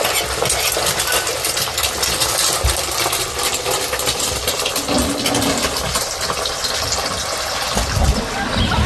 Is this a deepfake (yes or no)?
yes